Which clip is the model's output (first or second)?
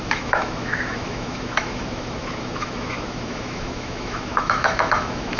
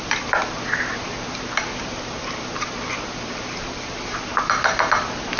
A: first